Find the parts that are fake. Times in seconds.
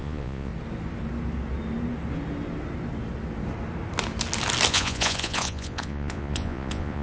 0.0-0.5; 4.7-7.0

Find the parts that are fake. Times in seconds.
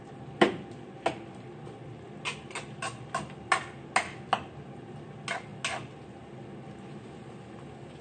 none